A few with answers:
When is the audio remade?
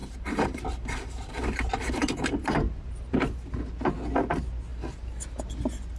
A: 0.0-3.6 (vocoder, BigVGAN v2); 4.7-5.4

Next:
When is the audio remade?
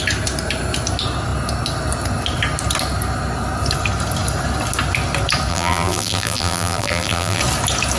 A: 5.5-7.4 (vocoder, BigVGAN v2)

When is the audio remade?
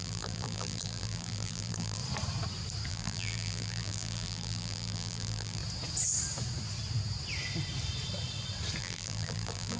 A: 0.0-2.0 (vocoder, BigVGAN v2); 2.9-5.6; 8.8-9.8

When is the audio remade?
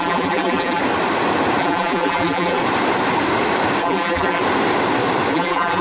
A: 0.0-0.8 (vocoder, BigVGAN v2); 1.6-2.6; 3.8-4.4; 5.3-5.8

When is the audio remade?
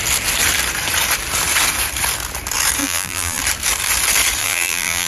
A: 2.8-3.4 (vocoder, BigVGAN v2); 4.4-5.1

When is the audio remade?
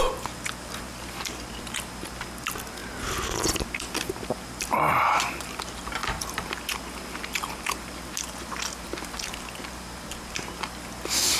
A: none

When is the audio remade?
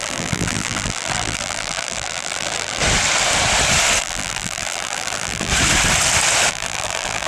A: 0.0-2.8 (vocoder, BigVGAN v2); 4.0-5.5; 6.5-7.3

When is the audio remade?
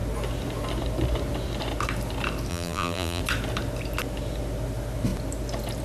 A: 2.5-3.2 (vocoder, BigVGAN v2)